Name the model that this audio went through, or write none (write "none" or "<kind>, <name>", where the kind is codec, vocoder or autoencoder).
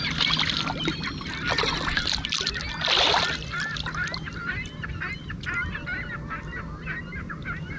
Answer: none